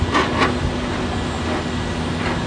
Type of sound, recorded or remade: recorded